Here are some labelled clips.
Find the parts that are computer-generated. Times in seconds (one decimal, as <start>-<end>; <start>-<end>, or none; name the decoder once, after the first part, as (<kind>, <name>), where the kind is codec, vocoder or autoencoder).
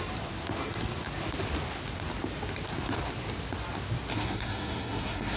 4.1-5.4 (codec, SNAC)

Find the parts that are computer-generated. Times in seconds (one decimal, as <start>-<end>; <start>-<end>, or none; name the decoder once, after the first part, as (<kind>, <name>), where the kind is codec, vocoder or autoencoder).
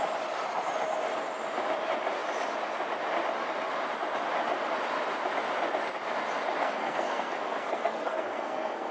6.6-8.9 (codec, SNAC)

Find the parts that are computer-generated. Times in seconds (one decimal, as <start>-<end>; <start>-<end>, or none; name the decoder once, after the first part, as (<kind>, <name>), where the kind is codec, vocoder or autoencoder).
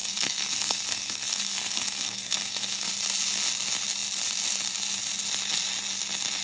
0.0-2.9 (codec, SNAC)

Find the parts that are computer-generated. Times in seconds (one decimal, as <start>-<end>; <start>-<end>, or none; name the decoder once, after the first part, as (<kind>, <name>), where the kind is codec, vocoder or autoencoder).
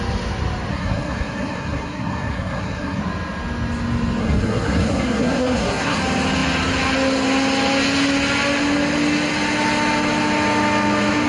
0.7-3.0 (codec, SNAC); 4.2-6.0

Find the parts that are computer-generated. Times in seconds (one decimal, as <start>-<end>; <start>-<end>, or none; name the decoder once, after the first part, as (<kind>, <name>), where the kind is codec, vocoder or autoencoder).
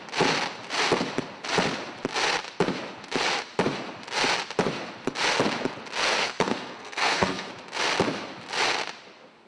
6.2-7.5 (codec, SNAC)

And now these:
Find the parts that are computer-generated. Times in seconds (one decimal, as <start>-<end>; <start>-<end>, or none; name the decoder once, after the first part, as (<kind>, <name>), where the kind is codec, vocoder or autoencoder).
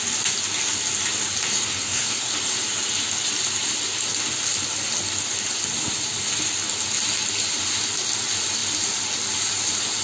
1.5-2.3 (codec, SNAC)